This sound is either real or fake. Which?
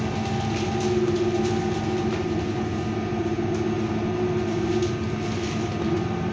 real